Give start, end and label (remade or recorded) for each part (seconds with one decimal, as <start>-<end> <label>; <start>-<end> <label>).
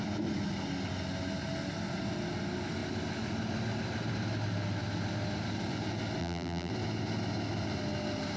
0.0-6.2 recorded; 6.2-6.7 remade; 6.7-8.4 recorded